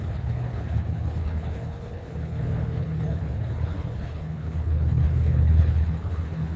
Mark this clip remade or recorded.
remade